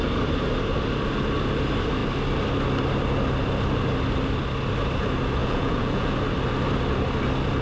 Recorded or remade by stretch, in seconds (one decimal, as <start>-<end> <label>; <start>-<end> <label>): 0.0-5.4 recorded; 5.4-6.1 remade; 6.1-7.6 recorded